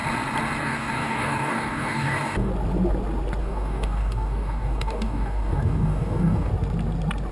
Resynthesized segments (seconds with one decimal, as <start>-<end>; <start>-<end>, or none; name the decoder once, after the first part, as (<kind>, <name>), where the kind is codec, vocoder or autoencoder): 0.6-2.5 (codec, DAC); 3.4-6.5